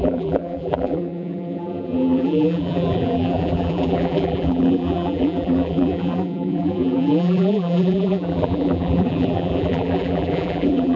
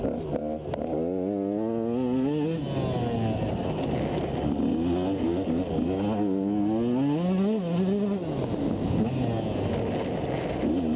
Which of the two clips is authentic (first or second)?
second